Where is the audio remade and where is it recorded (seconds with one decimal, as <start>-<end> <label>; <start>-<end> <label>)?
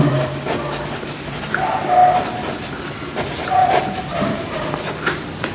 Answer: 0.0-3.6 recorded; 3.6-4.7 remade; 4.7-5.5 recorded